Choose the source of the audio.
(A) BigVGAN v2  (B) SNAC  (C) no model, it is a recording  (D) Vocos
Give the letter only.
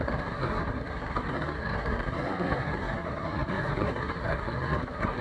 B